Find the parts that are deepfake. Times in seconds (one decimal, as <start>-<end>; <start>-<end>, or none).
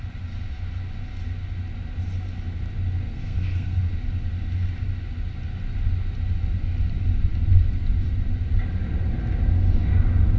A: 3.1-3.8